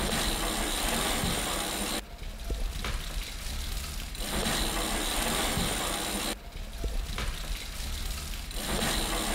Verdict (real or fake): real